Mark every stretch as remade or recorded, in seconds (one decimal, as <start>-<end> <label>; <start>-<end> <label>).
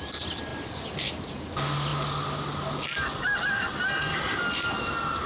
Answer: 0.0-5.3 recorded